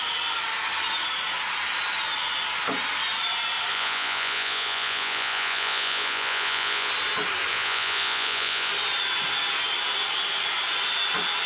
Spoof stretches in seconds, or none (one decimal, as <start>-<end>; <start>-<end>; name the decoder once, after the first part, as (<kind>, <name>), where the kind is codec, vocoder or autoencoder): 3.7-6.9 (vocoder, Vocos); 7.5-8.7